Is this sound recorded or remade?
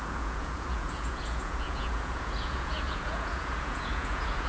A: remade